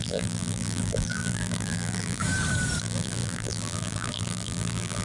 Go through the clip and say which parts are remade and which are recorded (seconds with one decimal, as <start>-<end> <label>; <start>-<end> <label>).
0.0-2.2 remade; 2.2-2.8 recorded; 2.8-5.0 remade